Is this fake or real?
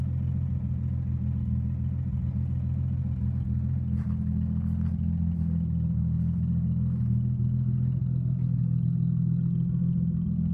real